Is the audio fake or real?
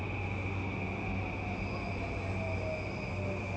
real